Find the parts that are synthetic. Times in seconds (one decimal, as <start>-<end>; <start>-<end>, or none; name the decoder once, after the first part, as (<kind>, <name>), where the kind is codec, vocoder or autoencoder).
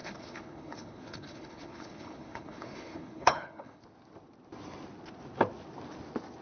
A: 0.0-3.8 (codec, HILCodec)